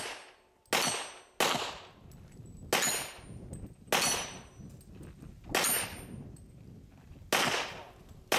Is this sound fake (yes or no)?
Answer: no